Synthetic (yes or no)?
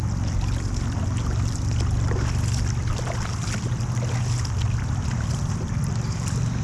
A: no